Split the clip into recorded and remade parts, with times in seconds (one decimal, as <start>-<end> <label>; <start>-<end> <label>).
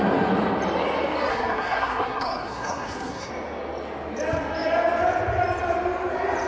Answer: 0.0-1.3 recorded; 1.3-3.3 remade; 3.3-6.5 recorded